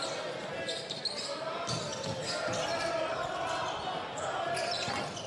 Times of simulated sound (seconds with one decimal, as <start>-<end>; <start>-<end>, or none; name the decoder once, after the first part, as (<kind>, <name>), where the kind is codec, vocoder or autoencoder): none